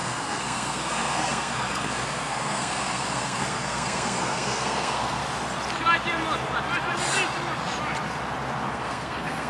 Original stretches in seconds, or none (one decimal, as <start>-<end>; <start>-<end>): 5.2-8.7